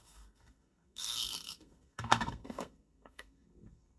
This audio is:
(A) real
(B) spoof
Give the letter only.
B